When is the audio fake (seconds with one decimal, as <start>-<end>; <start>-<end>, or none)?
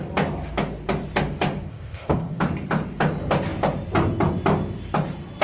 1.7-2.4